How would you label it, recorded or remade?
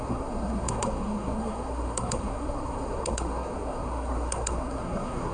remade